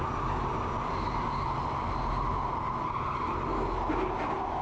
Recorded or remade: recorded